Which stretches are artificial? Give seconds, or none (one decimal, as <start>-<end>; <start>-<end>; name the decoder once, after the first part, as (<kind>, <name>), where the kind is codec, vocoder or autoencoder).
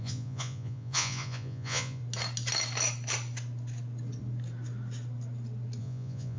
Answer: 0.0-2.0 (vocoder, Vocos); 5.8-6.4